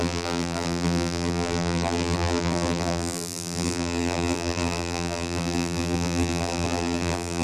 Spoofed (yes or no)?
yes